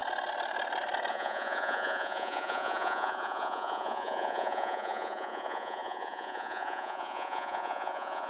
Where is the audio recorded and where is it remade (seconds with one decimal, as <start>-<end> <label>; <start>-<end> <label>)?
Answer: 0.0-1.1 recorded; 1.1-8.3 remade